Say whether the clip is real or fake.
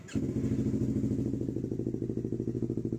real